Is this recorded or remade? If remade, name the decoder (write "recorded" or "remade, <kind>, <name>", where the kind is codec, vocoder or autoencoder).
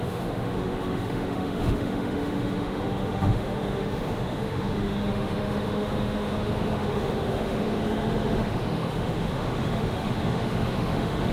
remade, autoencoder, DAC-VAE